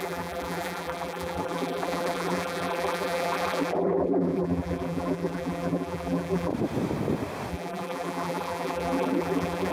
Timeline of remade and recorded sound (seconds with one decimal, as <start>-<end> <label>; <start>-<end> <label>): 0.0-6.5 remade; 6.5-7.5 recorded; 7.5-9.7 remade